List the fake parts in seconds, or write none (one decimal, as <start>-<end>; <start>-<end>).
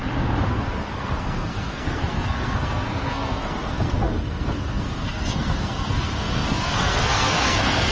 0.5-7.9